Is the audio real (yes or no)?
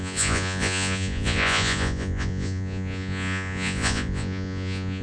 no